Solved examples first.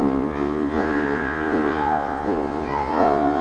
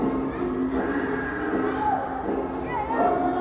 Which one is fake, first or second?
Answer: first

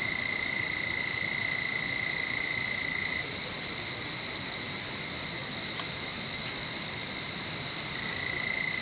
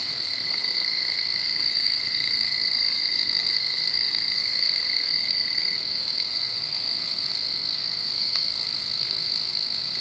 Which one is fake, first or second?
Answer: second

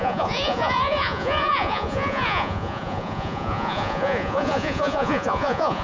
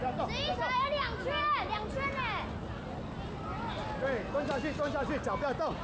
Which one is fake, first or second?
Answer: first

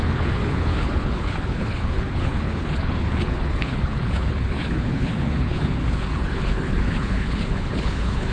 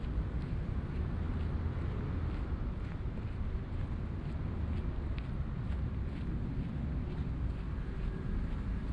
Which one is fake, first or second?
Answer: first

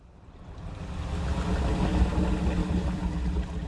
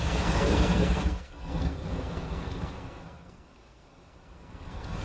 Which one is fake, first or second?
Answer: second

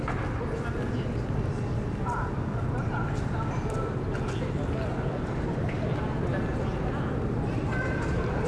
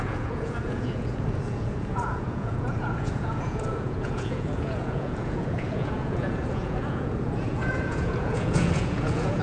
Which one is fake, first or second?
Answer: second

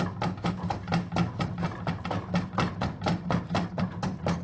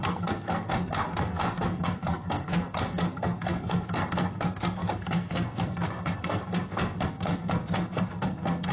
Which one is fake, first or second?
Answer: second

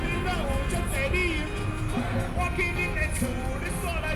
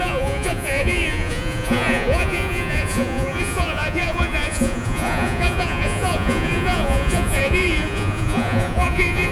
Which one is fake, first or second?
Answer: second